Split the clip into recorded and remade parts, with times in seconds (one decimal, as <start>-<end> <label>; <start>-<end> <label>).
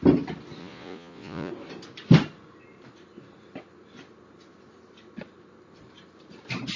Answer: 0.0-0.6 recorded; 0.6-1.5 remade; 1.5-6.8 recorded